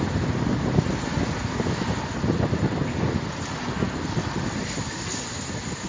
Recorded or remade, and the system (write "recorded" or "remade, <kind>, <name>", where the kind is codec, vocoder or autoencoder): recorded